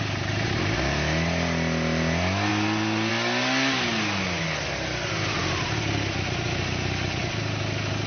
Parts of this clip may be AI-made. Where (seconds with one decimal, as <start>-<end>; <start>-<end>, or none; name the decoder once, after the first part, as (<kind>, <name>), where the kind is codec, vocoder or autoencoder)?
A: none